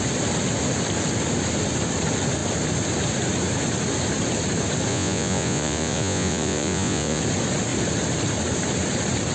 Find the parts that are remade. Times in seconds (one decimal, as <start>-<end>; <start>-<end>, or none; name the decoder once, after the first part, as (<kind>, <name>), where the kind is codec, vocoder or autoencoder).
4.9-7.2 (vocoder, Vocos)